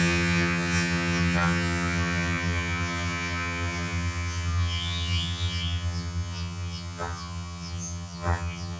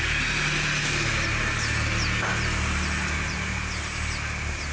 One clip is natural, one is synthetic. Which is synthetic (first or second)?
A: first